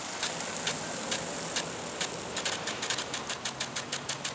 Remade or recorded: recorded